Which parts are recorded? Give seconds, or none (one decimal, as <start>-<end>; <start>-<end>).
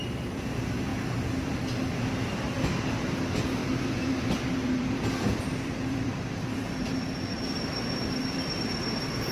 0.0-3.6; 8.5-9.3